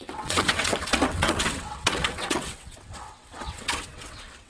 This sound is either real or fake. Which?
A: fake